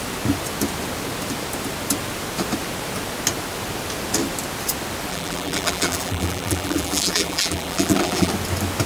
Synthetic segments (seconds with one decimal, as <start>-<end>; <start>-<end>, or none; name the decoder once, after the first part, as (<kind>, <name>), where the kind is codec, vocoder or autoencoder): 5.1-8.3 (vocoder, BigVGAN v2)